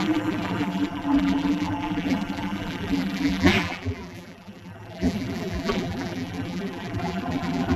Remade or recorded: remade